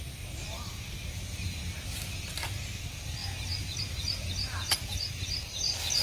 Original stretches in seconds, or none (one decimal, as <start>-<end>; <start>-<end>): 0.0-6.0